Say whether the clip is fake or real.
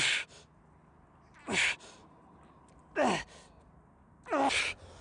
real